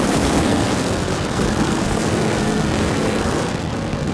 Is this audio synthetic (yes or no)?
yes